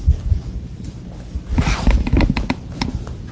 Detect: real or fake real